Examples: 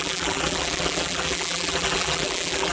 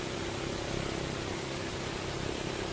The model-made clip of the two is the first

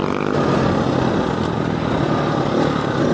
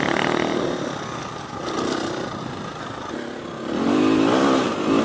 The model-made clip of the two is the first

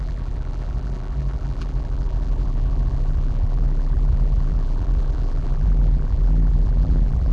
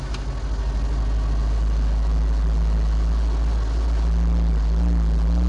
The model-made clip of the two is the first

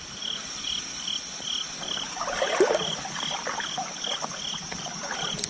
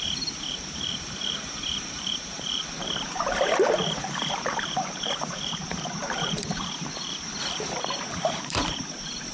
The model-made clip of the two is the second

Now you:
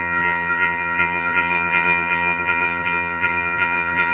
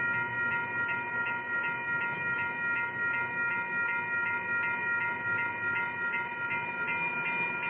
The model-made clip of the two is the first